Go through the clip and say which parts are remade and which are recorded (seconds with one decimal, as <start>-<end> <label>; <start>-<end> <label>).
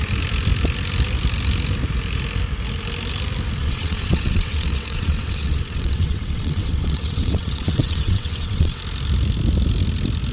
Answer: 0.0-3.6 recorded; 3.6-8.8 remade; 8.8-10.3 recorded